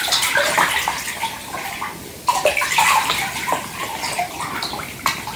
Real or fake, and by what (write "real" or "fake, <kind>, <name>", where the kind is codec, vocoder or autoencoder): fake, vocoder, BigVGAN v2